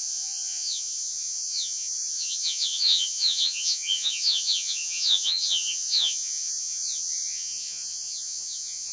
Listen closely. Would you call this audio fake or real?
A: fake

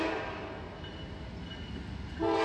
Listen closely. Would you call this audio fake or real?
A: real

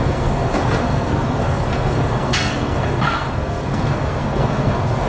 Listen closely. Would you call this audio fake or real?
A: fake